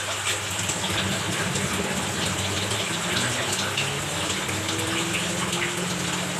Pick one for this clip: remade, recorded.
recorded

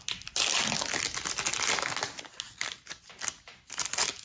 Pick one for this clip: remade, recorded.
recorded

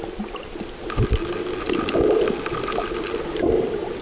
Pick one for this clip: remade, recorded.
recorded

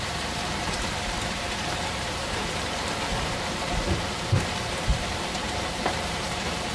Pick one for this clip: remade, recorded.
remade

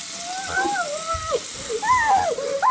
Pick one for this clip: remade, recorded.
recorded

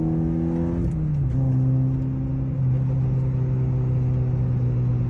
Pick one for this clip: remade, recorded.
recorded